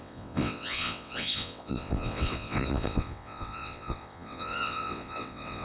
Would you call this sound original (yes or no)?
no